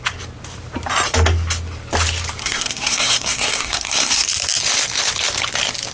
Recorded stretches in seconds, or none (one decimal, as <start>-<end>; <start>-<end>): 0.0-2.4; 4.3-5.9